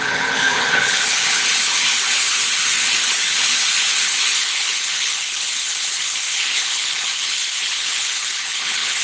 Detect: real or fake fake